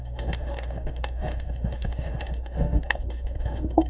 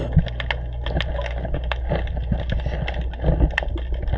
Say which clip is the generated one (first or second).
first